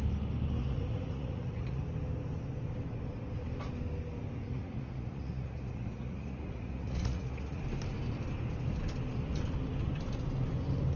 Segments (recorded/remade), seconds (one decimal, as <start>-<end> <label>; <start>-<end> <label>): 0.0-0.6 recorded; 0.6-1.8 remade; 1.8-4.5 recorded; 4.5-7.6 remade; 7.6-11.0 recorded